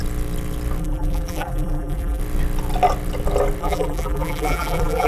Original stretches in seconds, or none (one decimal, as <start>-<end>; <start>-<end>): 0.0-0.8; 2.2-3.6